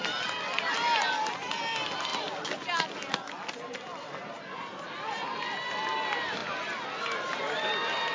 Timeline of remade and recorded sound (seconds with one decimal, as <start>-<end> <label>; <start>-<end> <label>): 0.0-8.1 recorded